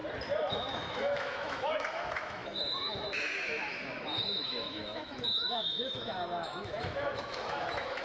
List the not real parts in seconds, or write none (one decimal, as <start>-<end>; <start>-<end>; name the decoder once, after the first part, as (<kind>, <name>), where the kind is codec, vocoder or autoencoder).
0.5-8.0 (autoencoder, DAC-VAE)